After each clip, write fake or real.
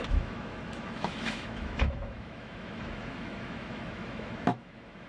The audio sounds fake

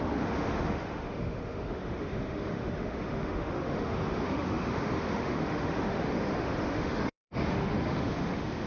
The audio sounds fake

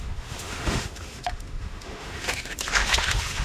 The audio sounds fake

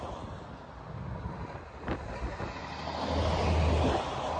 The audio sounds real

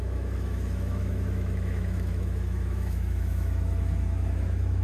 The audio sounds fake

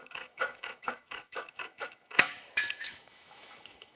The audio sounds fake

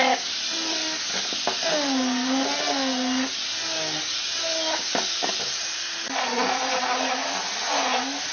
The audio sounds real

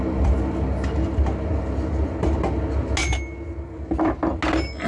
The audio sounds real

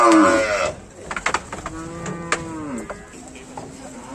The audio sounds real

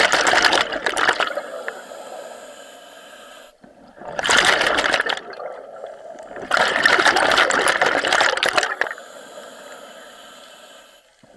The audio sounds real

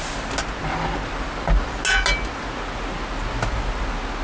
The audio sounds real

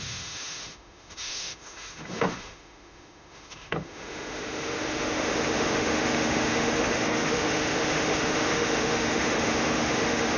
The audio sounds fake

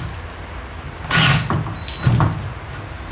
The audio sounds real